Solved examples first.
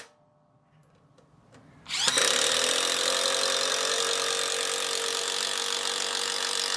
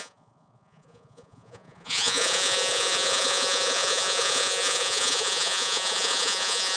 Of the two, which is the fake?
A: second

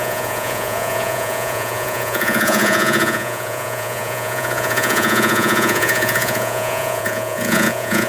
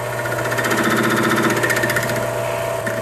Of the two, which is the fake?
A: first